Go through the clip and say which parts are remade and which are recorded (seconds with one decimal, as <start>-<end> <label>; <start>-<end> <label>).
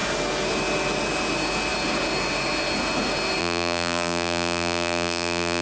0.0-3.4 recorded; 3.4-5.6 remade